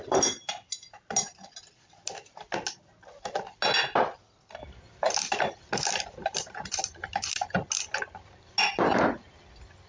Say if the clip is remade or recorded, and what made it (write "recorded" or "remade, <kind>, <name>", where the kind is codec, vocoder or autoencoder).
recorded